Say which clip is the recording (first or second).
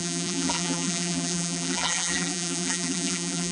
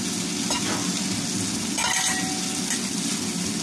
second